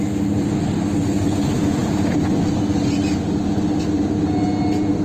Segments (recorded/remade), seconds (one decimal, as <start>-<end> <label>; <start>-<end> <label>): 0.0-1.8 recorded; 1.8-2.6 remade; 2.6-5.0 recorded